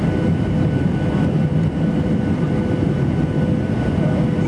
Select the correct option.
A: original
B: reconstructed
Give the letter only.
A